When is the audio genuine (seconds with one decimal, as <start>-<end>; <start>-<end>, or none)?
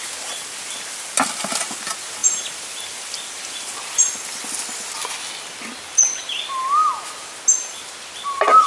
0.0-8.7